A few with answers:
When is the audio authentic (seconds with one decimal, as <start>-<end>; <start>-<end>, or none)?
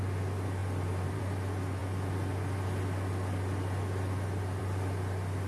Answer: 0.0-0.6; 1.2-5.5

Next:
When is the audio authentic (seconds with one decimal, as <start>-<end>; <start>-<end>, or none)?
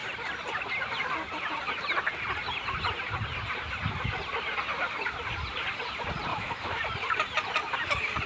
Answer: 0.0-6.3; 6.8-8.3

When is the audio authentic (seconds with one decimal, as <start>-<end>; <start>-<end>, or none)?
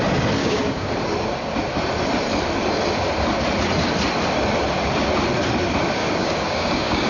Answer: 0.0-0.4; 0.9-6.0